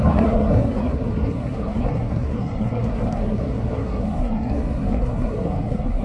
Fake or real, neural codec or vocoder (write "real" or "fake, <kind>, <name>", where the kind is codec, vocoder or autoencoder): fake, codec, SNAC